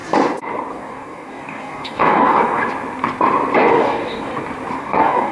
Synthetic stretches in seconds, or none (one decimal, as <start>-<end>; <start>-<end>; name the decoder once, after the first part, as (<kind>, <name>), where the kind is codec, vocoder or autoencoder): 0.7-2.6 (codec, DAC); 3.7-4.3; 4.8-5.3

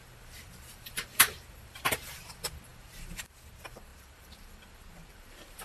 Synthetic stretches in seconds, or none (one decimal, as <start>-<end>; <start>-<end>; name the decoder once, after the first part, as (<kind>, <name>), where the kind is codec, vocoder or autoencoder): 0.0-5.6 (vocoder, BigVGAN v2)

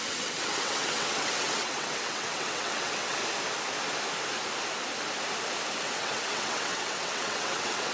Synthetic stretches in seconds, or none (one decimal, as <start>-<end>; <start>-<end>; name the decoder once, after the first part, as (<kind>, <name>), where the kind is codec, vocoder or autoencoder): 0.0-3.2 (vocoder, WaveNeXt); 5.8-7.9

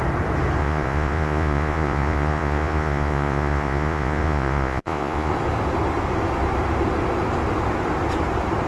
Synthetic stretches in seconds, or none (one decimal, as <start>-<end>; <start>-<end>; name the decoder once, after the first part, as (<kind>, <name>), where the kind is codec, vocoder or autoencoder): 0.6-5.3 (vocoder, Vocos)

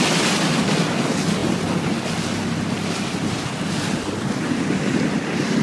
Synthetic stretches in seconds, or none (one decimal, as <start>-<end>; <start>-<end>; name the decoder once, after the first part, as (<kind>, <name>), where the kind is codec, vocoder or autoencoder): none

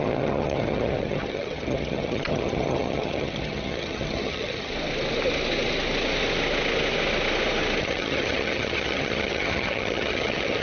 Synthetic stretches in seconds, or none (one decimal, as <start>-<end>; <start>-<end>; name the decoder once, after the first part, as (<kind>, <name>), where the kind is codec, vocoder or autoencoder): 0.0-4.7 (vocoder, HiFi-GAN); 7.8-10.6

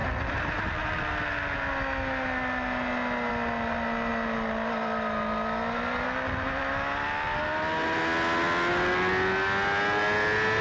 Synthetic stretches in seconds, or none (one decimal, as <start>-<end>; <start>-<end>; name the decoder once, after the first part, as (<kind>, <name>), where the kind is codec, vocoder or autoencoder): none

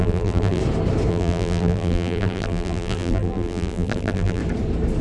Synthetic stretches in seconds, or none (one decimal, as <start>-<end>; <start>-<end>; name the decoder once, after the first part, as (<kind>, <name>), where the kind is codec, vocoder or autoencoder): 0.0-0.6 (vocoder, BigVGAN v2); 1.1-4.4